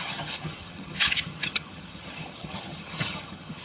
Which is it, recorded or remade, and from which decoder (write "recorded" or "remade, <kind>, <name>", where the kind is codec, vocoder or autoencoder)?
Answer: remade, vocoder, HiFi-GAN